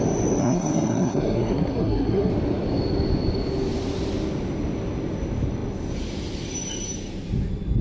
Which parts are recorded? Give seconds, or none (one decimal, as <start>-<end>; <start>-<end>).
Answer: 0.0-0.4; 2.3-7.8